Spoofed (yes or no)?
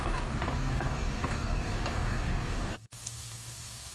yes